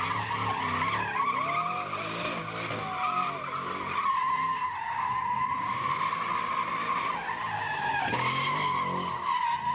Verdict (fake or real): real